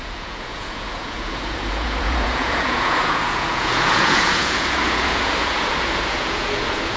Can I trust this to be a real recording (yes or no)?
no